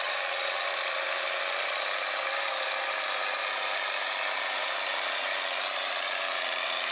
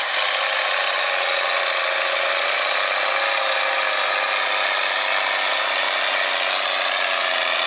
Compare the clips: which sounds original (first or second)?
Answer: second